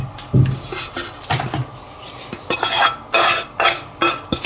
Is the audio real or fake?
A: real